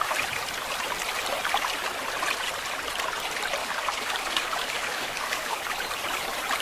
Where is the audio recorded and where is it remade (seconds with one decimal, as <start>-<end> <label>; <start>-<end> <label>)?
0.0-3.6 recorded; 3.6-5.6 remade; 5.6-6.6 recorded